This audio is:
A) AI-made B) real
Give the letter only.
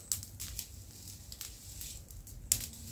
B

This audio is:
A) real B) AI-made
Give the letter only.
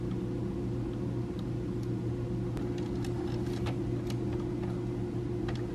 A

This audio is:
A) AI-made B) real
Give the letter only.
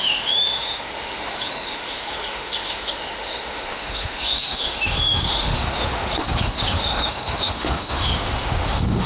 A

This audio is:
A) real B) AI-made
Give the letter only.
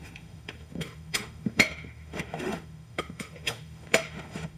B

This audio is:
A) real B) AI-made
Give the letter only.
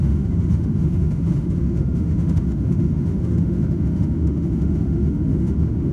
B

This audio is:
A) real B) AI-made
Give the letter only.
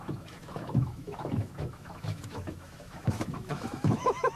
B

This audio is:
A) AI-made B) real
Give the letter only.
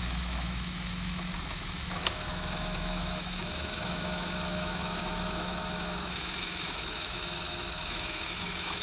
A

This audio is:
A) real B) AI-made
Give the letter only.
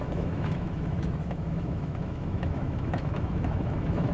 B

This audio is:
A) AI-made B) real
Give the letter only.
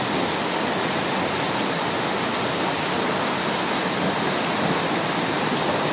B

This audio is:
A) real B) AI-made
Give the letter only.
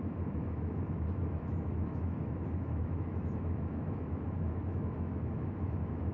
B